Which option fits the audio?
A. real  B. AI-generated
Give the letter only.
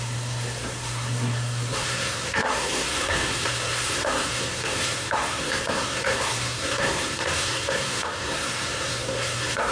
B